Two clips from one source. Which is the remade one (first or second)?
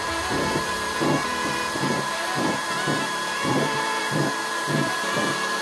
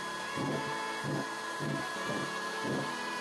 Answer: first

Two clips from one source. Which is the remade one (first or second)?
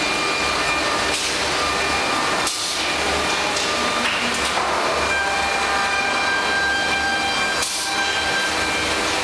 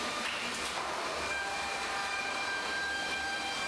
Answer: second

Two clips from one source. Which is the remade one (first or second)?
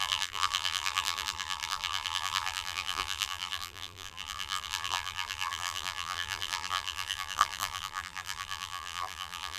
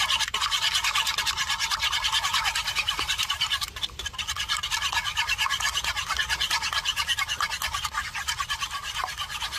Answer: first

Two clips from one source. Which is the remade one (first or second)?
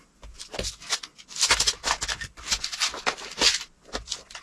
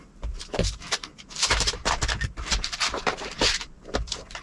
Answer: second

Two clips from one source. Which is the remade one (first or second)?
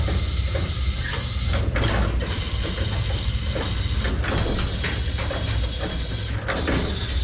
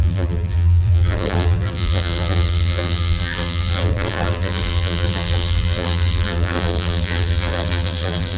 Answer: second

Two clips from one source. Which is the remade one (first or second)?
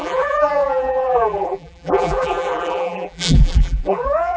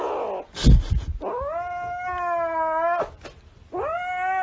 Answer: first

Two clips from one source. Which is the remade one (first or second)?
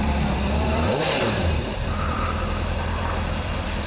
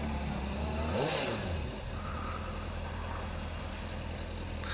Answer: first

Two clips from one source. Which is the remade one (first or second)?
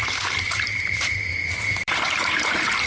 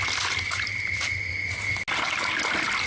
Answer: first